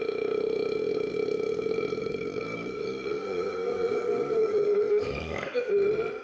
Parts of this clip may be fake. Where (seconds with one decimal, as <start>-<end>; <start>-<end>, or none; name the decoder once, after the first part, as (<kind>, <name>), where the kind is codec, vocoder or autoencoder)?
2.0-5.7 (codec, DAC)